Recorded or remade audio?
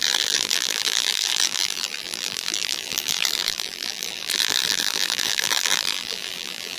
remade